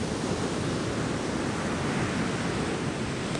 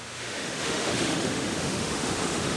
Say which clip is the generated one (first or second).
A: second